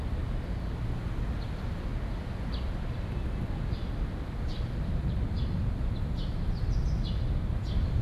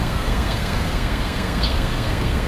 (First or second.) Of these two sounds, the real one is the first